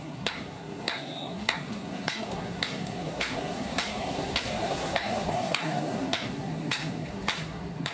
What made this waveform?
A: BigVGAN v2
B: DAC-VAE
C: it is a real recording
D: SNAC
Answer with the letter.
D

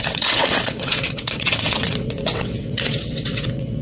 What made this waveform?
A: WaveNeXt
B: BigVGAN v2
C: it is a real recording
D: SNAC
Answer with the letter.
A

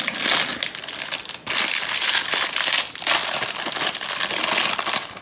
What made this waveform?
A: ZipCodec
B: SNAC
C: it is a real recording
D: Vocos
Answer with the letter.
C